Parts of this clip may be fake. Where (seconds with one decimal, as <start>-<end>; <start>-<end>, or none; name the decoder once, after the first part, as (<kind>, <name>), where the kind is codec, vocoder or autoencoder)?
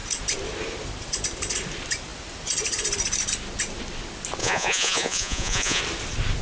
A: 4.4-5.8 (vocoder, Vocos)